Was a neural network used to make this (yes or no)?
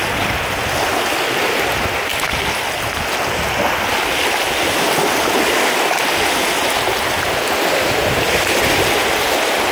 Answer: no